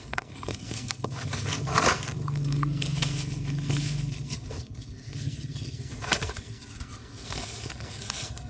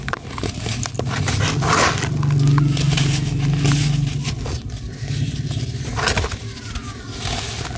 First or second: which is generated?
first